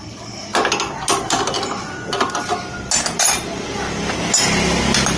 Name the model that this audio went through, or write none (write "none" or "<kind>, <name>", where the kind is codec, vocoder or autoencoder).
none